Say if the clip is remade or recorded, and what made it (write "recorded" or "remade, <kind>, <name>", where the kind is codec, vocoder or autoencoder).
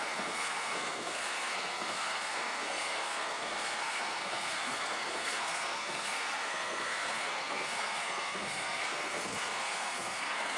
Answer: remade, codec, SNAC